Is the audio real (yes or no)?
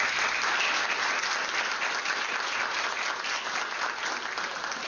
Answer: yes